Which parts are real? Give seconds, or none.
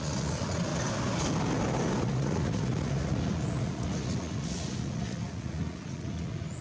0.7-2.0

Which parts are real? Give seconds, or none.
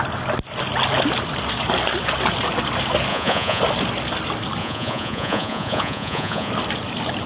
0.0-3.1; 3.6-4.6; 6.5-7.3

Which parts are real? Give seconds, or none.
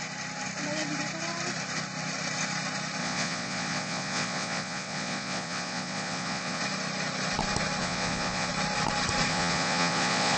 0.0-3.0; 6.6-7.8; 8.5-9.3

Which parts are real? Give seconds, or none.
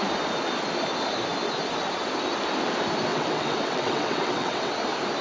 0.0-3.1; 4.7-5.2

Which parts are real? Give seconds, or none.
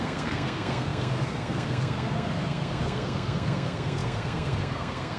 none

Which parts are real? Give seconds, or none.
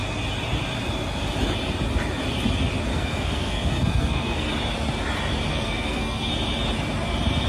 0.0-2.9; 4.5-5.5; 6.3-7.5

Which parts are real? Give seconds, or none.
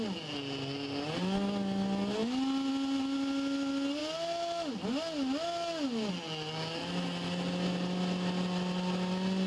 0.0-9.5